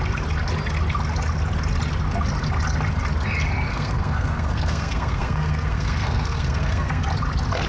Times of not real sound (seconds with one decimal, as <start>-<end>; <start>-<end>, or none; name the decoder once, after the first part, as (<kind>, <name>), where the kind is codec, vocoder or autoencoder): 3.7-7.0 (codec, SNAC)